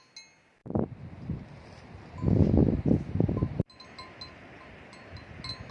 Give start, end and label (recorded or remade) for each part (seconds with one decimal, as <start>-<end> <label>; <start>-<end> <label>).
0.0-5.7 recorded